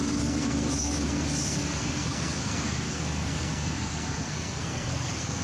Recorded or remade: remade